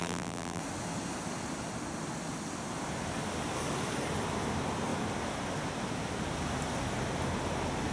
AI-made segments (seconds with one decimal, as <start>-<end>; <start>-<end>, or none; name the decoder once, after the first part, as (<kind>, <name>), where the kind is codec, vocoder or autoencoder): 0.0-0.6 (vocoder, BigVGAN v2)